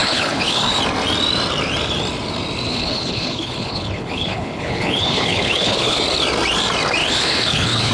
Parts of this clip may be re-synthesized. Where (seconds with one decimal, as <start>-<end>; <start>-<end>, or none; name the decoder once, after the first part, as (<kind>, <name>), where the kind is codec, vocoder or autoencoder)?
0.0-0.8 (codec, HILCodec); 2.7-6.0; 7.0-7.9